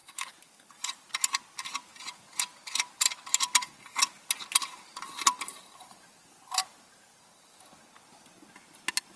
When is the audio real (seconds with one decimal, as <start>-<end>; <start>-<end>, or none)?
1.1-5.5; 7.6-9.2